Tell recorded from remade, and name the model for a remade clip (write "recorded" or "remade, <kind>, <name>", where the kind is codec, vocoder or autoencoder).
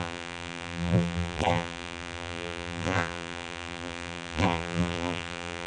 remade, vocoder, BigVGAN v2